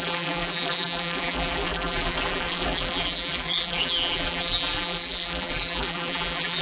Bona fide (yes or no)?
no